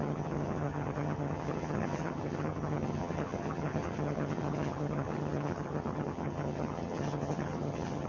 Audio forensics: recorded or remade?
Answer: remade